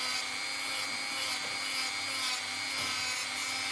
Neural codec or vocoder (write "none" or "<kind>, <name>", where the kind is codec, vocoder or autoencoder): none